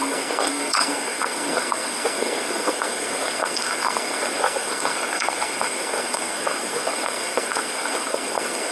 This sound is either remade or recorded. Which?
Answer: remade